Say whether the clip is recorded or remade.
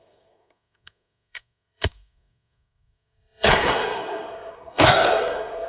remade